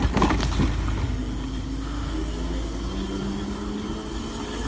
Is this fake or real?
real